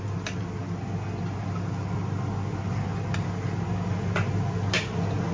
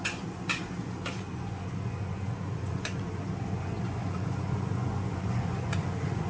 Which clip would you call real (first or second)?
first